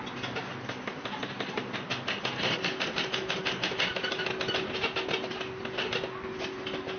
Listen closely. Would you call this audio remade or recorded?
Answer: recorded